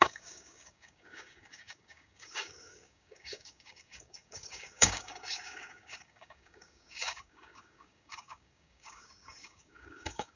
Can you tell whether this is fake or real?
fake